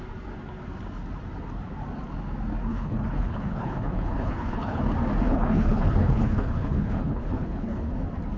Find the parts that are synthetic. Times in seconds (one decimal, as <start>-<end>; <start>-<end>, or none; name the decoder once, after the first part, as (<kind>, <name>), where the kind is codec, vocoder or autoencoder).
2.7-4.8 (codec, HILCodec); 5.3-7.9